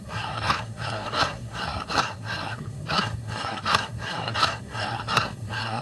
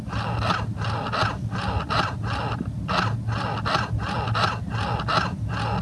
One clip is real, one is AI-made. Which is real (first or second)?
second